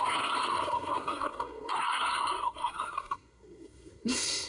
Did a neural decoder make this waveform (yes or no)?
yes